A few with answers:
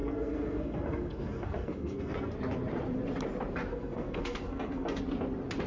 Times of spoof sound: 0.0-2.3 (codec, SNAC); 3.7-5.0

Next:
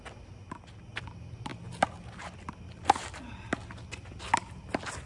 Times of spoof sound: none